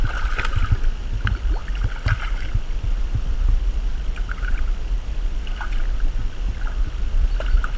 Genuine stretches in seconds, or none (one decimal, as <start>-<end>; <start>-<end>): 0.0-7.8